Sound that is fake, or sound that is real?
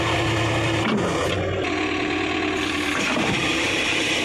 real